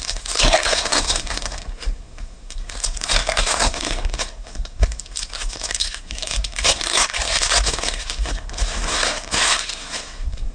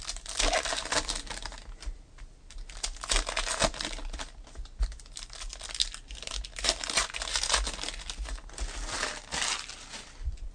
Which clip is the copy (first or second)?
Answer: first